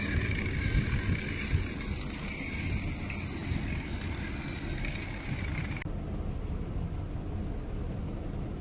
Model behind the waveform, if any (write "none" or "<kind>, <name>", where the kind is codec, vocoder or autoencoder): none